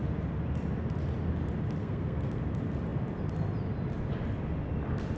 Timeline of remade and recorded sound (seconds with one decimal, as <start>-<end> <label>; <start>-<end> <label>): 0.0-1.8 recorded; 1.8-2.4 remade; 2.4-5.2 recorded